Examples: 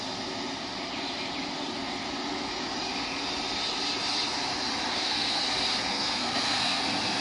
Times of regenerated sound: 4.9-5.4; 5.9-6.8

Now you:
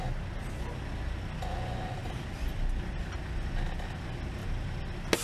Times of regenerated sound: none

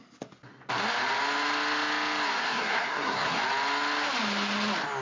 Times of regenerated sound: 2.4-3.4

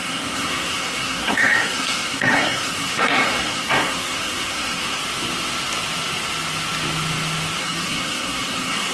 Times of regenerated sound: 0.0-5.0; 7.6-8.9

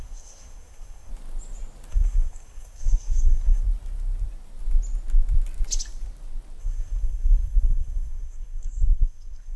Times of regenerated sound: 0.0-1.1; 1.9-3.6; 6.6-9.6

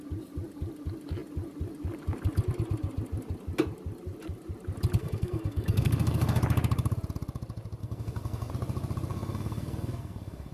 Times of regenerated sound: 5.0-6.4; 7.8-8.5; 9.1-10.5